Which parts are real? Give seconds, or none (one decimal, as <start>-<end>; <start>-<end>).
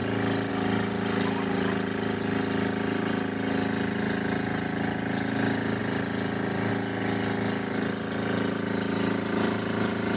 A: 0.0-10.2